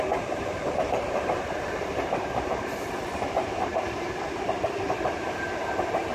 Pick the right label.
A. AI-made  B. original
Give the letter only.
A